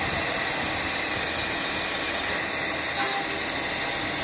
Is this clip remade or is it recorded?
recorded